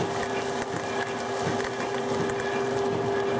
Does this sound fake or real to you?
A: real